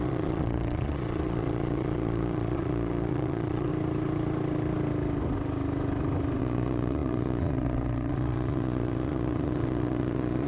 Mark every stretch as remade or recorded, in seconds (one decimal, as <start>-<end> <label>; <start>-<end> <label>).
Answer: 0.0-3.7 remade; 3.7-6.4 recorded; 6.4-10.5 remade